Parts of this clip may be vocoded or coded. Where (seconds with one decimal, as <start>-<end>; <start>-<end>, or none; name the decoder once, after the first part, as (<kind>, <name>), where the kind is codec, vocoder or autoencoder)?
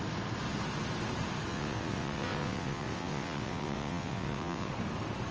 1.5-4.7 (vocoder, WaveNeXt)